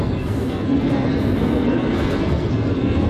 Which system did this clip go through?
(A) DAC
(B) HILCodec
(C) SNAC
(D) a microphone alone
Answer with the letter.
C